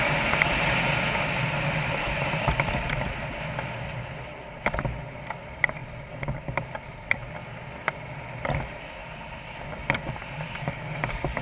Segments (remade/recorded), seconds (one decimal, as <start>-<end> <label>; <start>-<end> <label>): 0.0-5.8 recorded; 5.8-7.3 remade; 7.3-9.0 recorded; 9.0-10.7 remade; 10.7-11.4 recorded